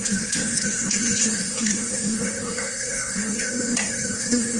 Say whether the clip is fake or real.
fake